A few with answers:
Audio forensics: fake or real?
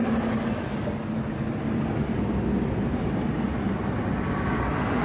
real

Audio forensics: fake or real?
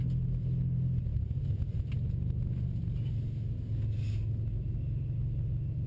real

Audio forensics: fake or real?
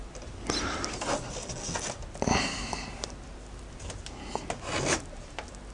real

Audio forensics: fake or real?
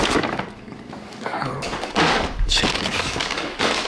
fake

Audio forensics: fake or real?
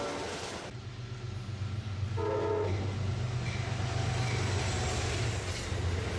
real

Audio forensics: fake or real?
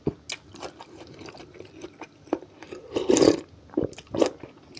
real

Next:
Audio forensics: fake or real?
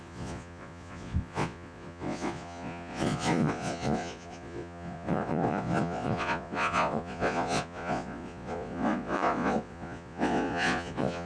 fake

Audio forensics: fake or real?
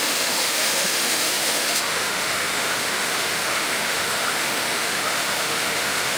fake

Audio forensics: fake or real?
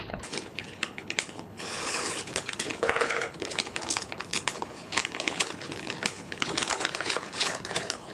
fake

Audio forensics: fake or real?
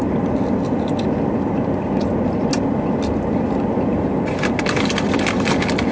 real